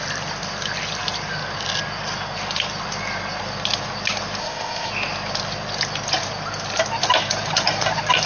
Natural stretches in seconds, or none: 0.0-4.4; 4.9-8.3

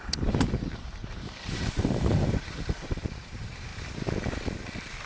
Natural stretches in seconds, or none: 3.7-5.1

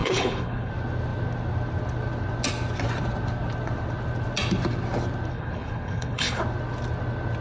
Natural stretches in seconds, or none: 0.7-5.3; 6.4-7.4

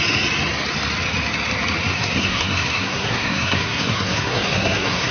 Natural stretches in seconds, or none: 0.0-1.9

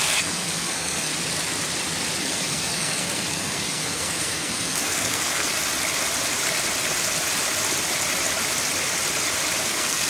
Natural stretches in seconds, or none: 1.1-2.2; 5.5-9.6

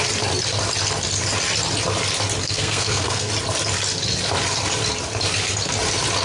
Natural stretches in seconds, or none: 0.0-2.4; 3.3-6.2